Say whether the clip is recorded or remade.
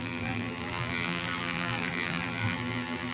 remade